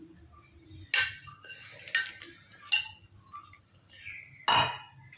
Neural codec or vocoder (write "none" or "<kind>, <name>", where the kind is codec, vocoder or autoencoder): none